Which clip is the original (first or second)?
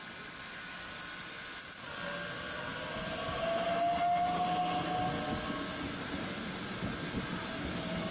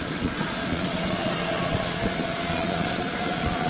first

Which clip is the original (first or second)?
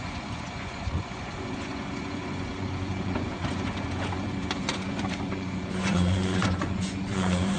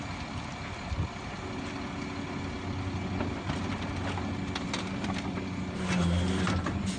second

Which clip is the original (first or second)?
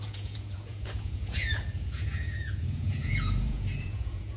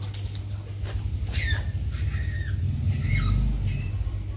second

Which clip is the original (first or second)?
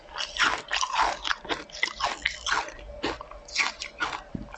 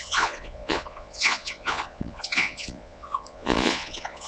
first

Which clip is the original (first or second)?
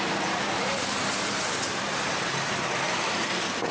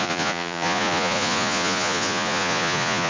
first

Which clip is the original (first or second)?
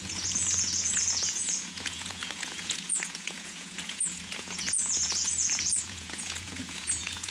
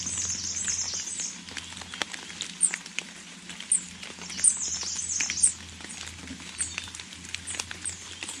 second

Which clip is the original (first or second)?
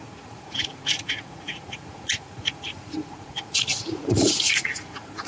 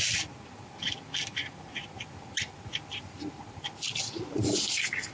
second